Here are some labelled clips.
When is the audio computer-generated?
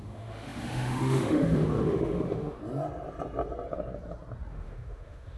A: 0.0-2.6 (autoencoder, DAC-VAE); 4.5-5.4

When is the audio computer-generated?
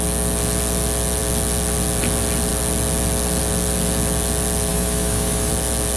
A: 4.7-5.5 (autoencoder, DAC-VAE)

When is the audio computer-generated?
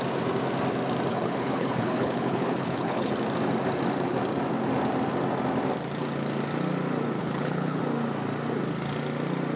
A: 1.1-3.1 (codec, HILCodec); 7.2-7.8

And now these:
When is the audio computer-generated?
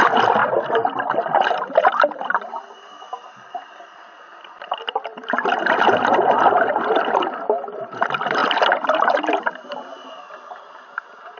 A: 0.4-2.5 (vocoder, BigVGAN v2); 5.1-5.7; 8.4-10.1